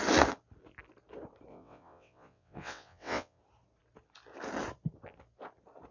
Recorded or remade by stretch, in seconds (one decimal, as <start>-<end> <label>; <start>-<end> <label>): 0.0-1.5 recorded; 1.5-3.4 remade; 3.4-5.9 recorded